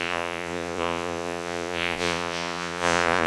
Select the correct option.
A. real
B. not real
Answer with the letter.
B